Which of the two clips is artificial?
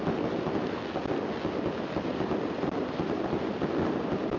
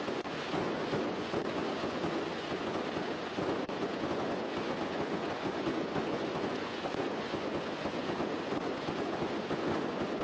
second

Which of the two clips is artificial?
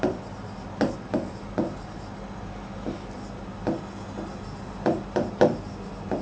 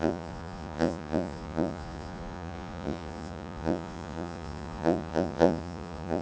second